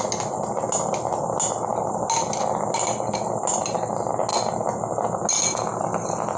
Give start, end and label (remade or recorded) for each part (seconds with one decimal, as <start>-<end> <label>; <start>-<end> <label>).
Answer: 0.0-6.4 recorded